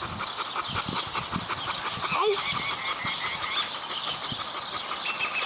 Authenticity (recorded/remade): recorded